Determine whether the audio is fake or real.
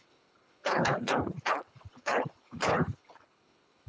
fake